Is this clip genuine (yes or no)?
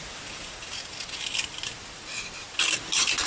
yes